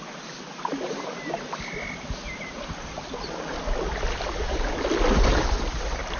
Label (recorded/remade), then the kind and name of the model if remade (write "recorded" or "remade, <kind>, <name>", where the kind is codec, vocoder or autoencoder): recorded